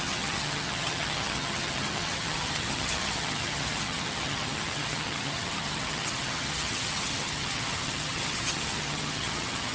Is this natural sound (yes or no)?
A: no